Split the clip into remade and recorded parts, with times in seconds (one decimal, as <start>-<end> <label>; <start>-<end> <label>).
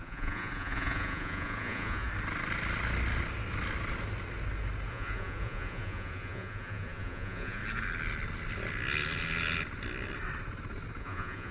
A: 0.0-2.1 remade; 2.1-4.9 recorded; 4.9-7.6 remade; 7.6-11.0 recorded; 11.0-11.5 remade